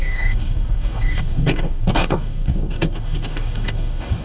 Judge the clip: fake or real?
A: fake